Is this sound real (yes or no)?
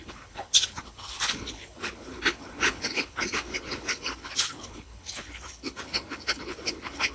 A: no